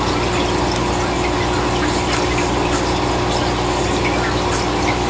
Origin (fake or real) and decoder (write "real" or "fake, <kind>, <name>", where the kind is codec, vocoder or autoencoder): real